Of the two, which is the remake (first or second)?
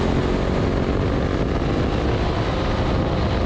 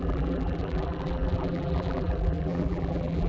second